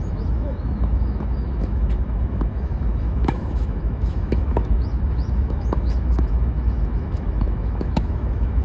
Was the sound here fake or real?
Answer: fake